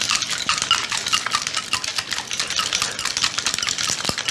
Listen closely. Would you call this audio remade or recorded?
recorded